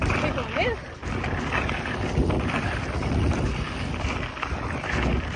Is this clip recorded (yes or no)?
yes